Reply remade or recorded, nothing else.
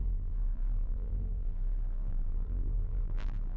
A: remade